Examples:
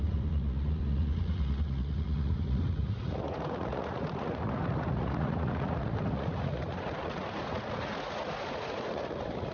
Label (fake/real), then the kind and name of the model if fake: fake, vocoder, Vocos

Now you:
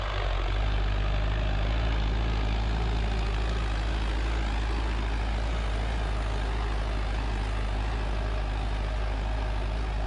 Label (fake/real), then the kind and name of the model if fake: real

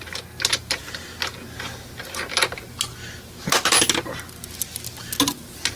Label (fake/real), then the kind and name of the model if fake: real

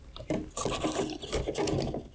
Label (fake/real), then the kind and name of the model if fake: real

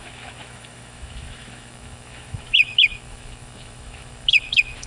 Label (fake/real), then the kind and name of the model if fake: fake, autoencoder, DAC-VAE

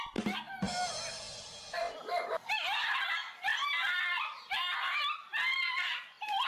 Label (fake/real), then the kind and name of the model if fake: real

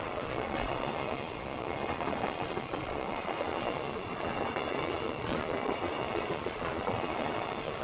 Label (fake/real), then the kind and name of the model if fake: fake, vocoder, Vocos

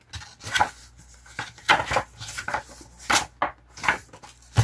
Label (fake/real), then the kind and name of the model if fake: real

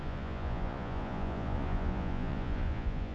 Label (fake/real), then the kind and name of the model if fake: fake, vocoder, Vocos